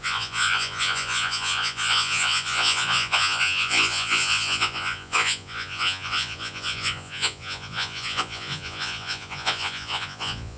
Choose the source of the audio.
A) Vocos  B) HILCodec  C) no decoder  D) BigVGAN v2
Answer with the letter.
A